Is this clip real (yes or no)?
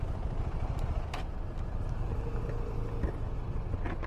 yes